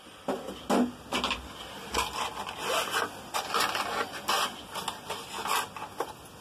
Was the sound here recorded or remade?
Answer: recorded